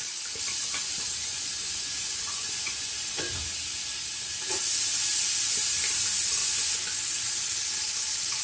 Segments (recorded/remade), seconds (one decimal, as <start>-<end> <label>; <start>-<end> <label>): 0.0-1.2 recorded; 1.2-3.3 remade; 3.3-6.4 recorded; 6.4-7.2 remade; 7.2-8.4 recorded

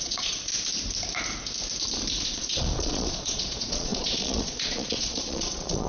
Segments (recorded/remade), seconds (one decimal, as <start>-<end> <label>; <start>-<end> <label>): 0.0-0.5 remade; 0.5-2.2 recorded; 2.2-5.9 remade

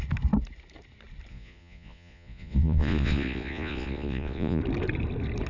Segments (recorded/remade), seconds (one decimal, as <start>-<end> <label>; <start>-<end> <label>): 0.0-1.3 recorded; 1.3-4.6 remade; 4.6-5.5 recorded

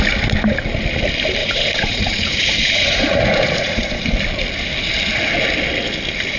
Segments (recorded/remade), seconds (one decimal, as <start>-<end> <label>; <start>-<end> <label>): 0.0-1.4 recorded; 1.4-4.0 remade; 4.0-6.4 recorded

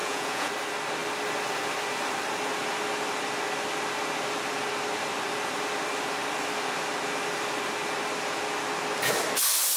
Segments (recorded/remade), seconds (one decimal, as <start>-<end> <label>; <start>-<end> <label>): 0.0-0.5 remade; 0.5-9.8 recorded

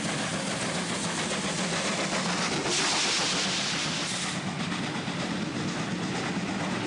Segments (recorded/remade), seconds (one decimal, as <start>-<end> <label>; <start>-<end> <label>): 0.0-6.9 recorded